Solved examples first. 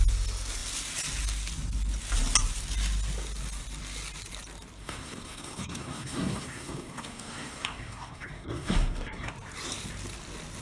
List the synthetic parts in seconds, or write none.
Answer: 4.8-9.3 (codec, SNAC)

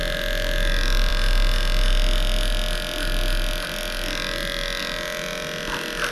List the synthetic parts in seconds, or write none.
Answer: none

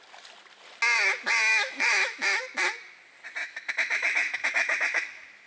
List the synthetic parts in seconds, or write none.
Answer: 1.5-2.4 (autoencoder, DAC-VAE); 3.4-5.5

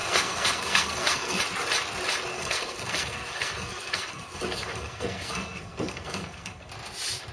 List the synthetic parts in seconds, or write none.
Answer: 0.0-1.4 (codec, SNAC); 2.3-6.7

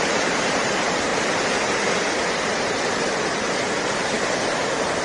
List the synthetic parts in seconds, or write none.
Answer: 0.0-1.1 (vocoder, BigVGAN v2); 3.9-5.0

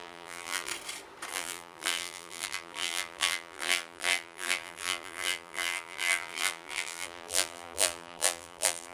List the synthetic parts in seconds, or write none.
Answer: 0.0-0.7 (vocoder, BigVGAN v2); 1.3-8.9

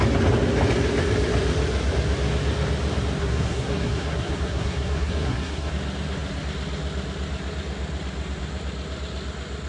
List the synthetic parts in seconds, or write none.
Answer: 3.2-5.7 (codec, SNAC)

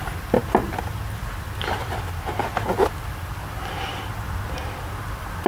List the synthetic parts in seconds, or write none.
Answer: none